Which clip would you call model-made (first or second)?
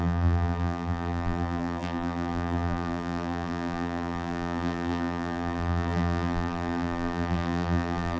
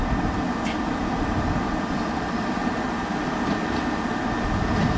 first